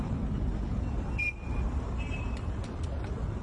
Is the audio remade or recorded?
recorded